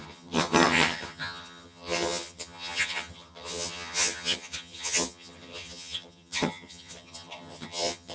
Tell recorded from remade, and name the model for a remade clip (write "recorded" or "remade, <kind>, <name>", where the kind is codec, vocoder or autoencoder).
remade, vocoder, HiFi-GAN